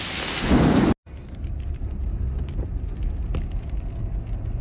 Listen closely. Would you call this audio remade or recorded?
recorded